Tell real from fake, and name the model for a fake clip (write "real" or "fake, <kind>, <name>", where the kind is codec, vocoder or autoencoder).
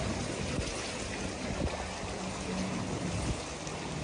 real